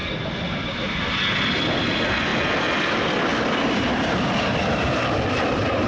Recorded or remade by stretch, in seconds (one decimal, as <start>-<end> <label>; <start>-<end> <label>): 0.0-2.3 recorded; 2.3-5.9 remade